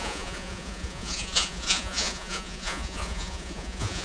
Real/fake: fake